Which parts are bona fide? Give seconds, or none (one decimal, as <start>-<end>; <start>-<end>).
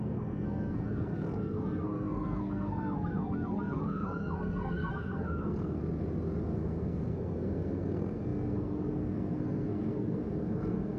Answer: 5.8-6.4